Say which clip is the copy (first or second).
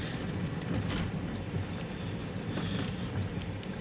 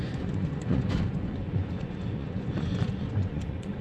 second